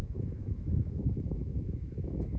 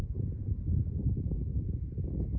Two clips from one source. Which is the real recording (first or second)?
second